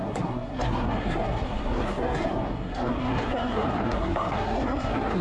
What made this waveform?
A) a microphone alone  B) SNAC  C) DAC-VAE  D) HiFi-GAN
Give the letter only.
B